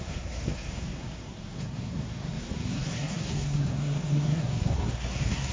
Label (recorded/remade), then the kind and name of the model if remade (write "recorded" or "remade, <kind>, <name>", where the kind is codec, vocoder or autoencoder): remade, codec, SNAC